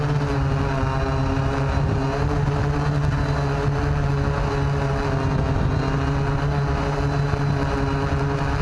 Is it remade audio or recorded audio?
recorded